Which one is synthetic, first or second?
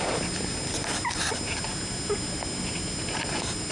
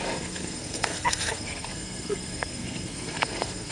second